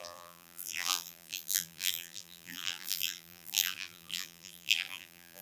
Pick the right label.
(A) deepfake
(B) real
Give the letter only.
A